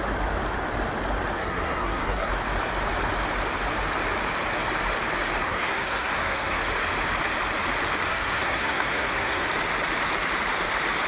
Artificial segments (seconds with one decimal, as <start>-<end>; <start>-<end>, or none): 1.4-2.3; 5.4-6.6; 8.1-9.5